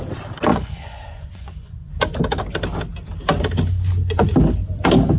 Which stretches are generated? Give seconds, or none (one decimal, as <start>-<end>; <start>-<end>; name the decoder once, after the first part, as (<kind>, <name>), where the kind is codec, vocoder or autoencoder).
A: 0.5-1.9 (vocoder, Vocos)